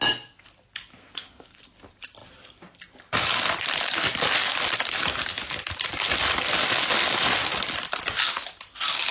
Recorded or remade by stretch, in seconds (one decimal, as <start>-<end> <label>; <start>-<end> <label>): 0.0-0.9 recorded; 0.9-1.6 remade; 1.6-9.1 recorded

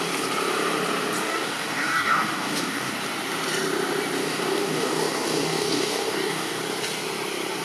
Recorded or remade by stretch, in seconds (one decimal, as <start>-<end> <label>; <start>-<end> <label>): 0.0-1.2 recorded; 1.2-2.9 remade; 2.9-4.2 recorded; 4.2-6.6 remade; 6.6-7.6 recorded

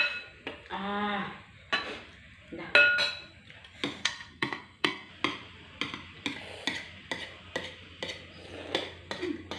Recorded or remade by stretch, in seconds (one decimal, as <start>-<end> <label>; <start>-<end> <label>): 0.0-4.0 recorded; 4.0-5.1 remade; 5.1-9.6 recorded

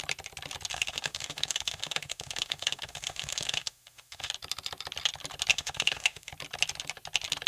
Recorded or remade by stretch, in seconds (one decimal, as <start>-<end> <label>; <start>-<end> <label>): 0.0-0.7 recorded; 0.7-4.3 remade; 4.3-5.5 recorded; 5.5-6.3 remade; 6.3-7.5 recorded